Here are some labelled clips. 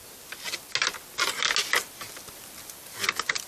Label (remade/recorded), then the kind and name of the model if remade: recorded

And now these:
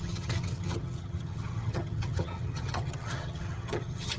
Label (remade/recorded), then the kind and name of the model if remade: remade, vocoder, HiFi-GAN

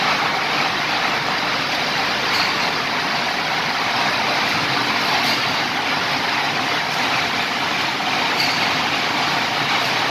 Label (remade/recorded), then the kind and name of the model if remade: remade, vocoder, BigVGAN v2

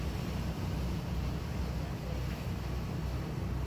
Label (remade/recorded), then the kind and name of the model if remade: recorded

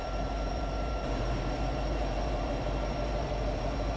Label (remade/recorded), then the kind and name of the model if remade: remade, vocoder, BigVGAN v2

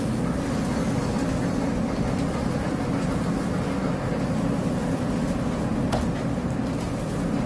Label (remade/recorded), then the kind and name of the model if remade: recorded